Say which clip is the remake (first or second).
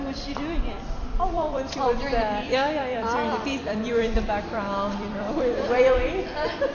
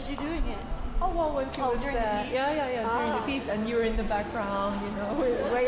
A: first